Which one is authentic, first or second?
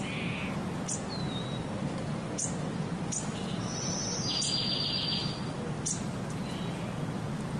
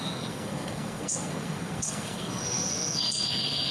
first